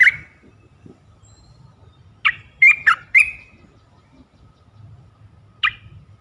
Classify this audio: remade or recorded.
recorded